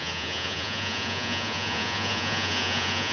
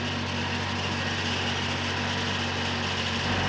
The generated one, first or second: first